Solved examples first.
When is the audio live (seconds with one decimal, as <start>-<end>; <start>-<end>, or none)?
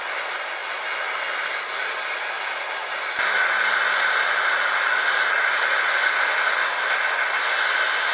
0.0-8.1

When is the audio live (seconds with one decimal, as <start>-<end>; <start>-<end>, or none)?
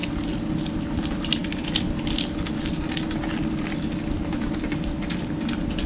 0.0-5.9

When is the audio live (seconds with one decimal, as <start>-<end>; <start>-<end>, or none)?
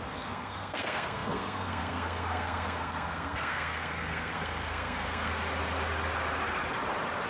5.3-7.3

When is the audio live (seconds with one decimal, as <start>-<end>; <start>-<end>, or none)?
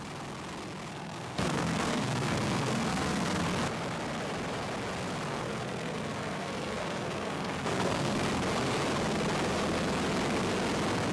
0.0-0.9; 3.4-5.3; 8.3-11.1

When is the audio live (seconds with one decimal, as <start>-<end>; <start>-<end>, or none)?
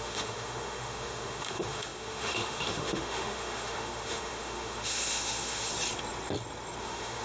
5.7-6.8